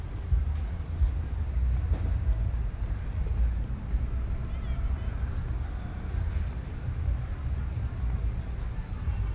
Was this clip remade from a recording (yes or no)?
no